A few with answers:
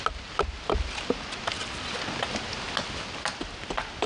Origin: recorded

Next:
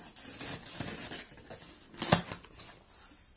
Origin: recorded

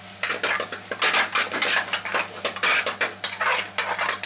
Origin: recorded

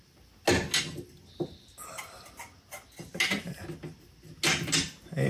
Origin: recorded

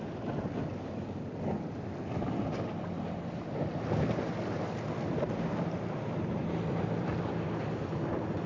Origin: recorded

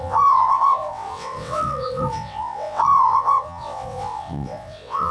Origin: remade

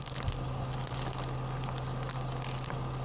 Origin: recorded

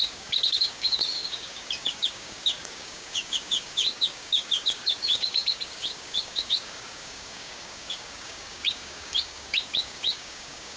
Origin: remade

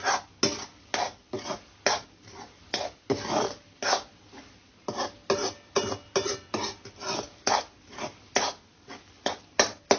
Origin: recorded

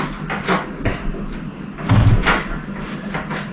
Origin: recorded